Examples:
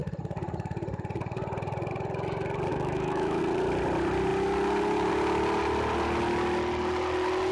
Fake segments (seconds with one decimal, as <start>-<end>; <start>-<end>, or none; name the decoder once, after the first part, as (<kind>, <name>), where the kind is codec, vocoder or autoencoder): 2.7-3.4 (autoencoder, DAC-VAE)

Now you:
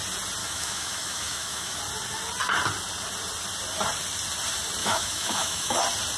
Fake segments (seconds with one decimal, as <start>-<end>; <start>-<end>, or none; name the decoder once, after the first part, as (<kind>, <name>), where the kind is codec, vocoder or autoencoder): 0.4-1.8 (autoencoder, DAC-VAE); 4.8-5.8

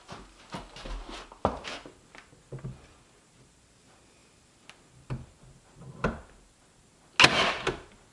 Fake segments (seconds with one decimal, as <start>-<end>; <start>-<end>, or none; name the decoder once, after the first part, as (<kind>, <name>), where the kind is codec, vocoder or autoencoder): none

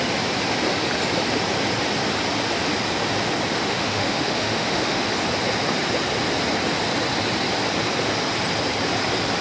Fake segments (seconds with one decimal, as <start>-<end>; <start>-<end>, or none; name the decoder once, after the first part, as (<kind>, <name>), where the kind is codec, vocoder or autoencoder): 3.5-5.0 (autoencoder, DAC-VAE)